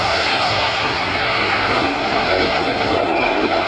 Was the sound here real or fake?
fake